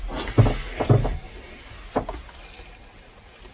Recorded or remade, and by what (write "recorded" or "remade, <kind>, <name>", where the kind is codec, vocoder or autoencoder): recorded